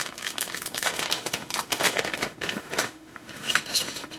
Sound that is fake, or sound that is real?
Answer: fake